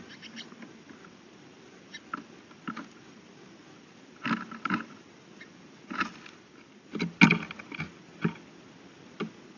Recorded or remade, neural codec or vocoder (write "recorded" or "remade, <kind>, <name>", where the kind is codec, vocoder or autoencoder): recorded